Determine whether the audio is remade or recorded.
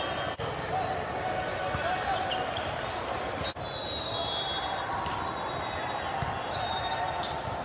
recorded